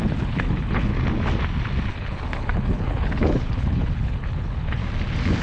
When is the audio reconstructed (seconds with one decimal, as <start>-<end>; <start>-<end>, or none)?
0.0-0.9; 1.9-4.8